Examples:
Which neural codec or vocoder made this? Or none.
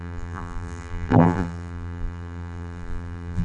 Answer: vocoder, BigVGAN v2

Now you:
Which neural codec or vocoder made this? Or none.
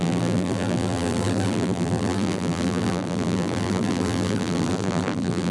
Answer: vocoder, BigVGAN v2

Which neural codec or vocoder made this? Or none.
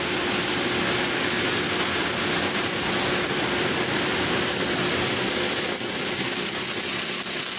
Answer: none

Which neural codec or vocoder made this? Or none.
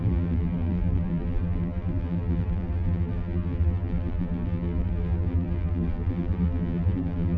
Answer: vocoder, BigVGAN v2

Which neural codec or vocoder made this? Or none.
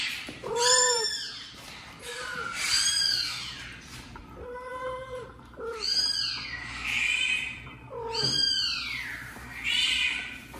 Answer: vocoder, BigVGAN v2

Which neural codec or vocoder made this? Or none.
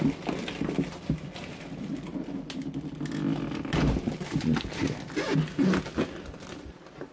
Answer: none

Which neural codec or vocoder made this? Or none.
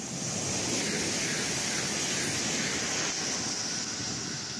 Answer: none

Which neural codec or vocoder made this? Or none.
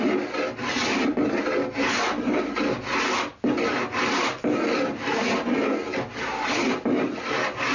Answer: none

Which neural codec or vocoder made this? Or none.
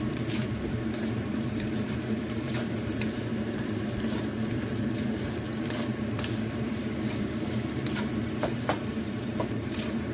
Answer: vocoder, BigVGAN v2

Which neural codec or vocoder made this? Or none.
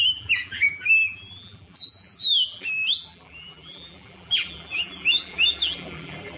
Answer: vocoder, BigVGAN v2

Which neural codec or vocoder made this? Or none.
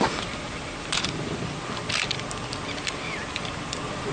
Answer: vocoder, BigVGAN v2